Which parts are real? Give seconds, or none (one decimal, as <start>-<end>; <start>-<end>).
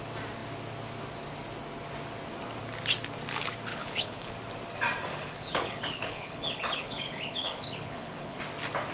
0.0-3.7; 4.3-5.1; 8.4-8.9